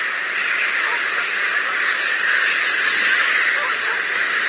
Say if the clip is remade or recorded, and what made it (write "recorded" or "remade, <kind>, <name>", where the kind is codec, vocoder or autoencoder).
recorded